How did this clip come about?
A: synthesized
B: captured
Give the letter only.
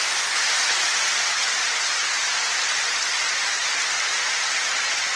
A